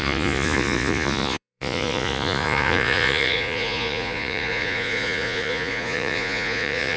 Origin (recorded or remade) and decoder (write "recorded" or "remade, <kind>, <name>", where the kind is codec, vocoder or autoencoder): remade, vocoder, Vocos